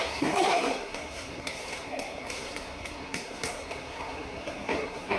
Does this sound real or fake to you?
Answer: fake